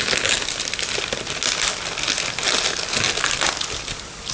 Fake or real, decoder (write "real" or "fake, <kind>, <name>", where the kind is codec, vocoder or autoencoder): real